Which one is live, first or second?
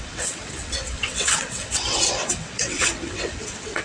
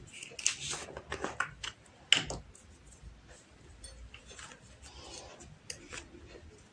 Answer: second